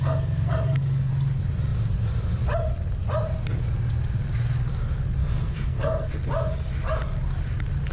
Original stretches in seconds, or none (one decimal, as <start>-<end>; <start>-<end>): 1.1-5.2; 6.1-7.9